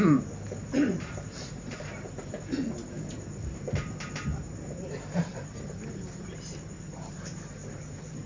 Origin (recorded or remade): remade